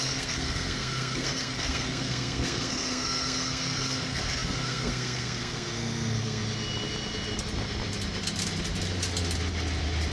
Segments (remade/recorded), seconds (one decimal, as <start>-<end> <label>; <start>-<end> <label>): 0.0-6.4 remade; 6.4-10.1 recorded